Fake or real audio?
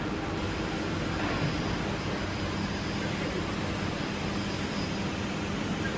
real